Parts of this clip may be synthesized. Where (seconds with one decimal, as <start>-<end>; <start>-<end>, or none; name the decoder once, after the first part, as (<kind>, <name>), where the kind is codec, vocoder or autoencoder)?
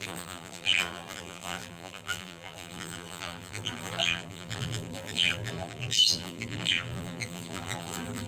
0.0-8.3 (vocoder, BigVGAN v2)